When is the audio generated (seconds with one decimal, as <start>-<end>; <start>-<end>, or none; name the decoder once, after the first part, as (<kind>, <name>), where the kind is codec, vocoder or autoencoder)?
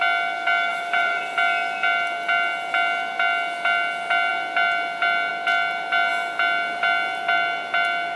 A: 0.7-1.2 (vocoder, BigVGAN v2)